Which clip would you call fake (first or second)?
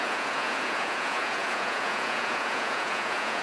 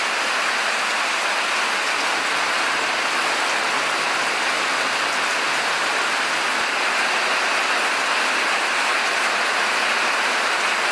first